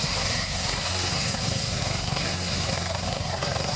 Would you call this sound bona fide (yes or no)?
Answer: no